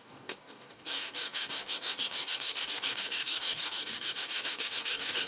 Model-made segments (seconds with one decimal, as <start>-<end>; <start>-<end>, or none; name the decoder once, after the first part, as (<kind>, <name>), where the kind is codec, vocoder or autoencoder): 0.0-5.3 (codec, DAC)